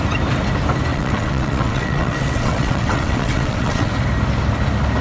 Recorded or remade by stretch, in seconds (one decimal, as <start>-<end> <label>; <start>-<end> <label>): 0.0-0.9 recorded; 0.9-3.9 remade; 3.9-5.0 recorded